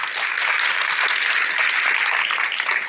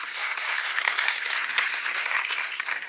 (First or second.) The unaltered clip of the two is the first